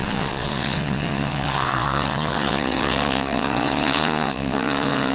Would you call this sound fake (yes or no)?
yes